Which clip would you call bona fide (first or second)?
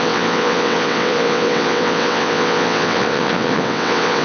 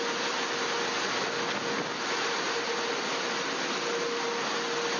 second